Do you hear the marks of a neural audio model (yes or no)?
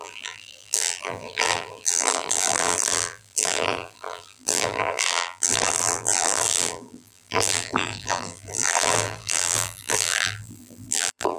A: yes